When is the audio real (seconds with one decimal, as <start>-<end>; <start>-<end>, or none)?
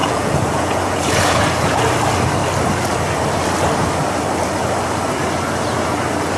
1.8-6.4